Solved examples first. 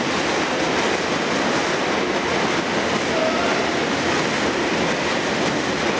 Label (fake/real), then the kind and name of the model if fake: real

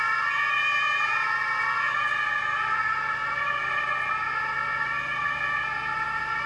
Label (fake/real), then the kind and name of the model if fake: real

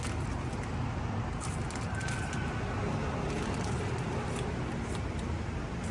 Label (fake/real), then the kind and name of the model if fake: real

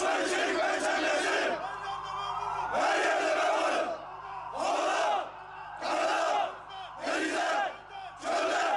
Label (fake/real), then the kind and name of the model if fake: real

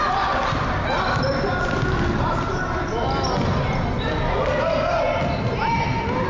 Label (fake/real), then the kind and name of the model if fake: real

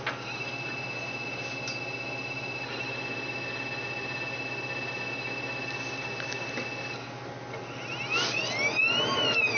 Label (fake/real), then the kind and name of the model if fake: real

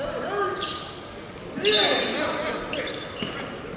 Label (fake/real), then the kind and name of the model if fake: real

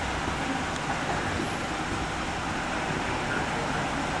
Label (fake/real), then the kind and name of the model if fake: real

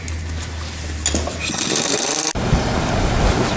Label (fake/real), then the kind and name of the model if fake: real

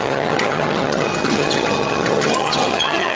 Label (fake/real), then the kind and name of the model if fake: fake, vocoder, HiFi-GAN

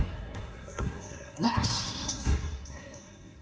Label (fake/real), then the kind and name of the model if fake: fake, codec, SNAC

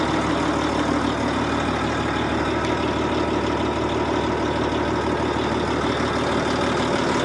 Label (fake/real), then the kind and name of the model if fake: real